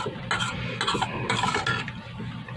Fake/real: real